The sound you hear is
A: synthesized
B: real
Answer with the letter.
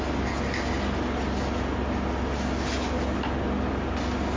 B